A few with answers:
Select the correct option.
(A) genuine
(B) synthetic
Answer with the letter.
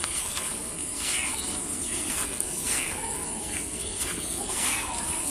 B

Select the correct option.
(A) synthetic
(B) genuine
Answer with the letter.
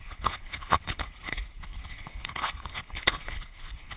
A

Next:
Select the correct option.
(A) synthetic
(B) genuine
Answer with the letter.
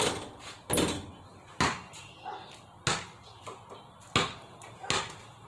B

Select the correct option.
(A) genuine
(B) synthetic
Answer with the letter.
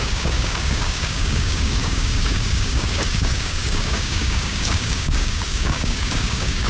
B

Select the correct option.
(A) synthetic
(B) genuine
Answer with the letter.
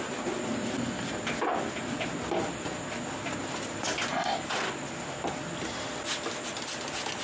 B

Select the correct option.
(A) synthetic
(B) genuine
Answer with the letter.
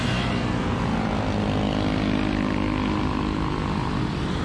B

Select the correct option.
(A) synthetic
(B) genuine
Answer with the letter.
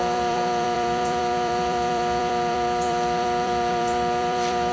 A